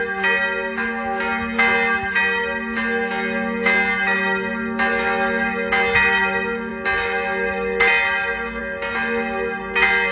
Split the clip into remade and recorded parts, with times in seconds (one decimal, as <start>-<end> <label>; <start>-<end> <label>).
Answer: 0.0-10.1 recorded